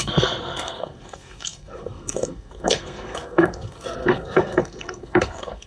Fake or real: fake